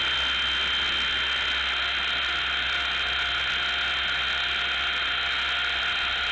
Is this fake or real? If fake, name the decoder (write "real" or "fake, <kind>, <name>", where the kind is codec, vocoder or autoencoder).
real